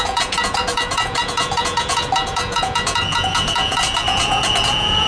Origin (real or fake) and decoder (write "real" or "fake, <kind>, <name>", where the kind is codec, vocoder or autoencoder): fake, vocoder, Vocos